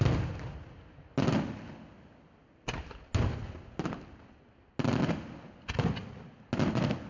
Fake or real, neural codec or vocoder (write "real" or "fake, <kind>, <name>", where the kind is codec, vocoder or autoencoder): real